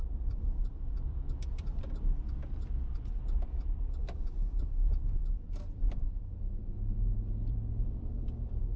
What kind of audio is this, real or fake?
fake